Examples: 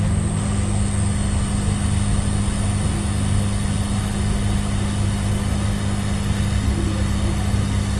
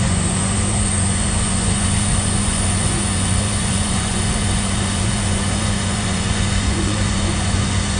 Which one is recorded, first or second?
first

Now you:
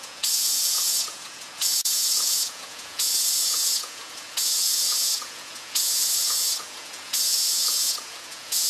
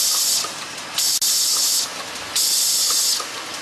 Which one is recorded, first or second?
second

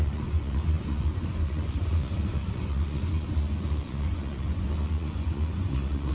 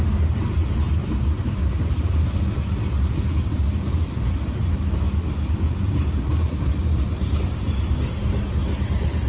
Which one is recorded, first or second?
second